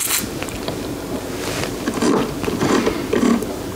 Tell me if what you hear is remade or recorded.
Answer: recorded